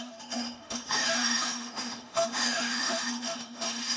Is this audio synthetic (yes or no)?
yes